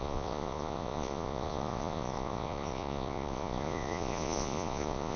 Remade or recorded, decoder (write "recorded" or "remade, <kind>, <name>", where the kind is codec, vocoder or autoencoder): remade, vocoder, Vocos